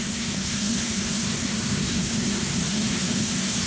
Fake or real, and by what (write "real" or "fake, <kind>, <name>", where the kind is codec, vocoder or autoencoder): fake, codec, SNAC